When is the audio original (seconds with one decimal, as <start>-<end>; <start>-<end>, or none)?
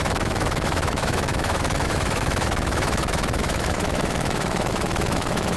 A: none